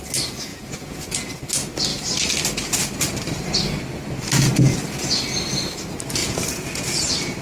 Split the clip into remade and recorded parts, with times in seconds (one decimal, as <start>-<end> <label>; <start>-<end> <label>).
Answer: 0.0-0.5 recorded; 0.5-1.3 remade; 1.3-6.2 recorded; 6.2-7.4 remade